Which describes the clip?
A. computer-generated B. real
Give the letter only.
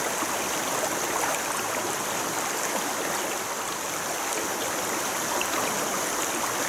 B